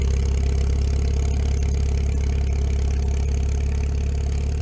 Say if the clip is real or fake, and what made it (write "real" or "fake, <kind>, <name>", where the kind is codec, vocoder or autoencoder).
real